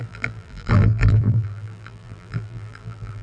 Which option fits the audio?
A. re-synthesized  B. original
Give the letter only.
A